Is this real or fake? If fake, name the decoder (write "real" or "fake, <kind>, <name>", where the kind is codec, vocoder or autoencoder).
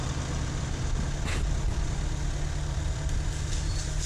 real